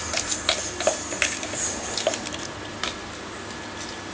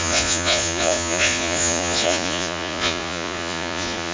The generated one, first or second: second